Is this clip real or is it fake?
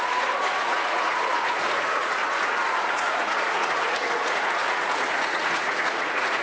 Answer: fake